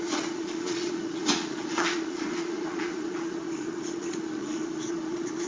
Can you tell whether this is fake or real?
fake